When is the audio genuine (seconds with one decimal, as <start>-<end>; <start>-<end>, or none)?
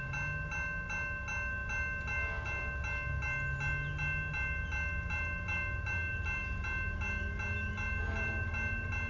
0.0-9.1